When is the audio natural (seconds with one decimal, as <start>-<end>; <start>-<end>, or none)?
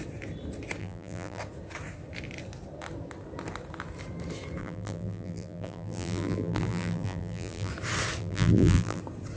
0.0-0.8; 1.4-4.6; 7.7-8.2; 9.0-9.4